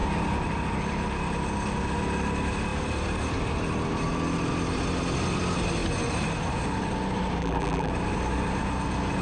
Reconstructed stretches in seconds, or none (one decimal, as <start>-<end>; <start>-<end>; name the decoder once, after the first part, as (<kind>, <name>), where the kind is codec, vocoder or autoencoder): 7.4-7.9 (vocoder, BigVGAN v2)